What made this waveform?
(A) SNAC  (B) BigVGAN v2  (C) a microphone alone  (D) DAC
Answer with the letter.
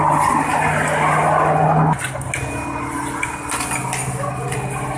C